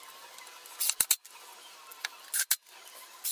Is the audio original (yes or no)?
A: yes